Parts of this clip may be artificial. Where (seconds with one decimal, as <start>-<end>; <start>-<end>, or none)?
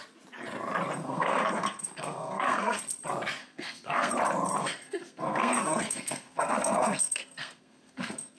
1.0-2.8; 3.4-4.1; 4.6-8.4